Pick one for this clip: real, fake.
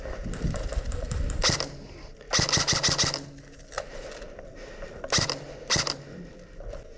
real